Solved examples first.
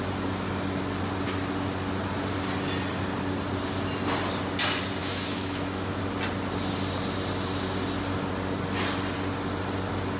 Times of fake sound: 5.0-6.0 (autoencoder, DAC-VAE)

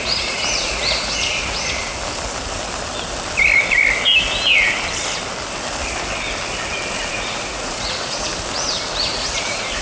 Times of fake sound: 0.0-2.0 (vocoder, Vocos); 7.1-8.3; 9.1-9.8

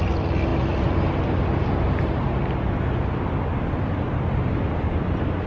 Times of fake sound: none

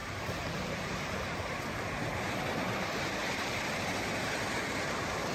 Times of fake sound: 0.0-1.6 (vocoder, BigVGAN v2); 3.2-3.9

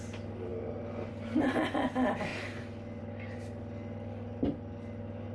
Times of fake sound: none